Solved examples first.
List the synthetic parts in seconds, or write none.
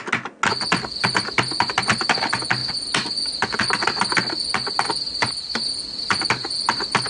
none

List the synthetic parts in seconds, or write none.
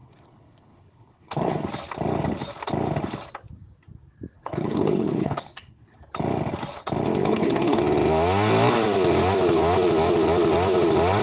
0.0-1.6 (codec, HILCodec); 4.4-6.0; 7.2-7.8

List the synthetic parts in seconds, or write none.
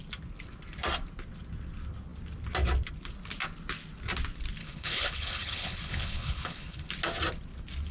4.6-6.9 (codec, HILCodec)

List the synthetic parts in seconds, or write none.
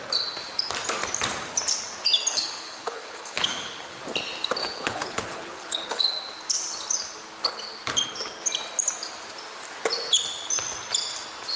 2.3-4.0 (codec, HILCodec); 4.6-6.0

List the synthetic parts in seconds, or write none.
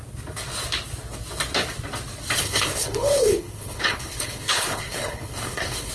2.4-5.9 (codec, HILCodec)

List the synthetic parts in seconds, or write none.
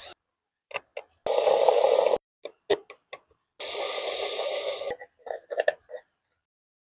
none